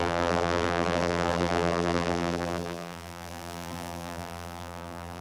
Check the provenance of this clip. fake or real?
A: fake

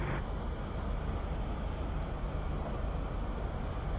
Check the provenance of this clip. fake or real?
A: fake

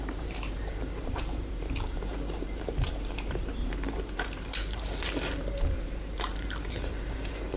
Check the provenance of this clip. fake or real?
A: fake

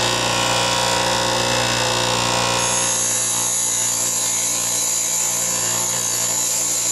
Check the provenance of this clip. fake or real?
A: real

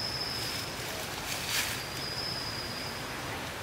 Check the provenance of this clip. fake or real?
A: real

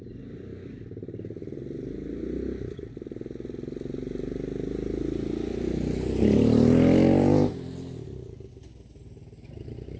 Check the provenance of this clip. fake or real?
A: real